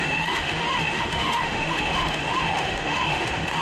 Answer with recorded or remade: remade